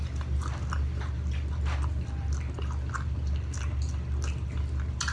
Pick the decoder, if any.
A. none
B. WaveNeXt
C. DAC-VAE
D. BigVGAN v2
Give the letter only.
A